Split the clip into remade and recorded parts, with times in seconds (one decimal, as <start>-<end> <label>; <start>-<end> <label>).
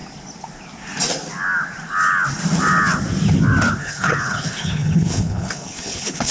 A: 0.0-3.8 recorded; 3.8-6.3 remade